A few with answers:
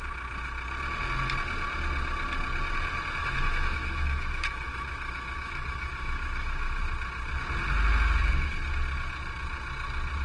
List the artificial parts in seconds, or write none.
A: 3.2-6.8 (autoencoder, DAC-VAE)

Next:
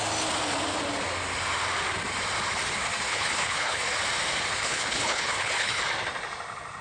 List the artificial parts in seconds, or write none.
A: 3.1-3.8 (codec, HILCodec); 4.6-5.8

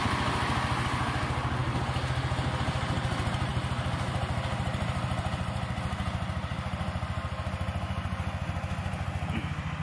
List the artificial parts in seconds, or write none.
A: none